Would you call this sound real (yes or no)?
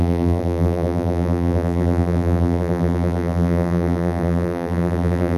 no